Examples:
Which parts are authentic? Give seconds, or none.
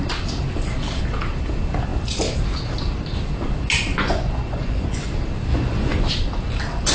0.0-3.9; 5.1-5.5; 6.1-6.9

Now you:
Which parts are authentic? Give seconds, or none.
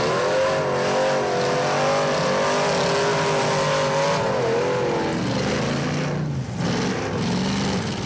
0.0-8.1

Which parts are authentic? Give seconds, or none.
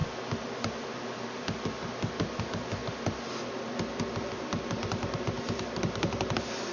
0.0-2.4; 2.8-4.3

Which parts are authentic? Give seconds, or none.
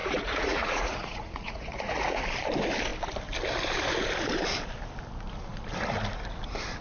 2.2-6.8